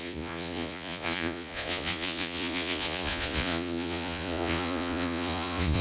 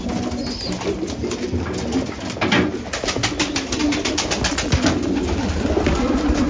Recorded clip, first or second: second